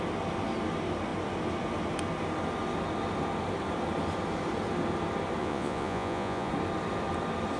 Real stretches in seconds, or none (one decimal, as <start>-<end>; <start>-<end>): 0.0-5.4; 6.5-7.6